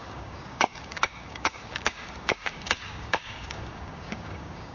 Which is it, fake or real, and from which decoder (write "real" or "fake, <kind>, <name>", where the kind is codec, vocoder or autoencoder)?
fake, codec, DAC